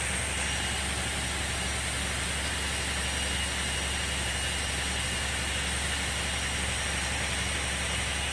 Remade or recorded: recorded